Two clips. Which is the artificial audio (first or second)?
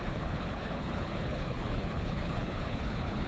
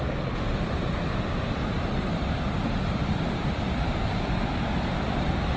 first